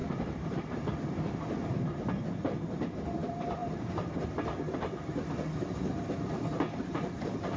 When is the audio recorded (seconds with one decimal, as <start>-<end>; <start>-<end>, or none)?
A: 0.8-7.6